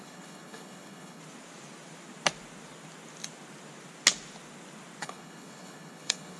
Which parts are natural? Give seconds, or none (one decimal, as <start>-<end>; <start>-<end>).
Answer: 1.2-5.0